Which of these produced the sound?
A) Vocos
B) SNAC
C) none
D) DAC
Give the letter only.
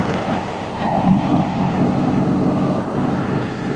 B